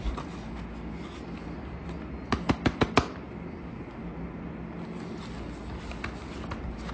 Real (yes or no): yes